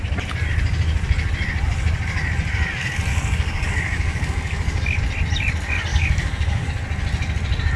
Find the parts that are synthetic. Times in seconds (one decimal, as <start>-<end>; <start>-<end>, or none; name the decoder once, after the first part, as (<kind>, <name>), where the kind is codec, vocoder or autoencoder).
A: 3.1-5.0 (codec, DAC); 5.9-6.7